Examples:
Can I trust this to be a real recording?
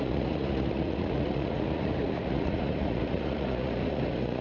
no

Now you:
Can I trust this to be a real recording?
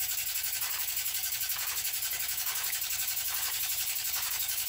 no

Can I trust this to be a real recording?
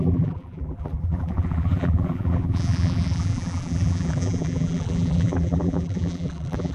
no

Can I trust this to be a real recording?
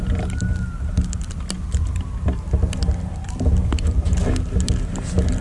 yes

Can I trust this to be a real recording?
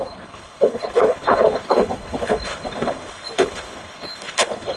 no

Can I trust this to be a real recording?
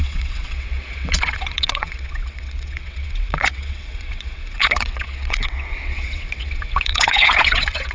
no